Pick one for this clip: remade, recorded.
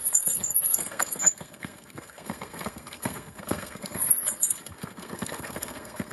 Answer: remade